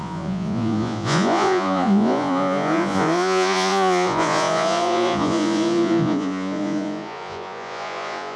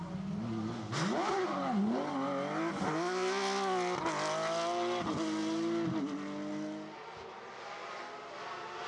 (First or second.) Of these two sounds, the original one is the second